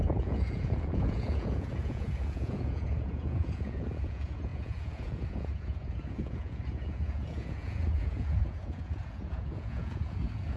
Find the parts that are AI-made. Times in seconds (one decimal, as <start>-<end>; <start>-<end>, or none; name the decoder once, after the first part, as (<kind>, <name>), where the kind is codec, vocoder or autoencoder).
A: 0.0-10.6 (vocoder, Vocos)